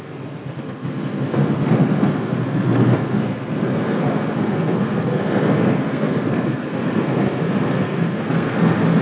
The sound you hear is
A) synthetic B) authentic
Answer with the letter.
A